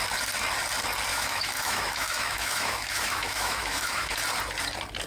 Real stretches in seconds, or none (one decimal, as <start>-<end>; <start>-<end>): 0.0-1.1; 4.2-5.1